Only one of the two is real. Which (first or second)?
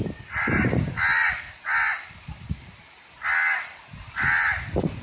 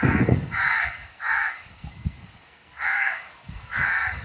first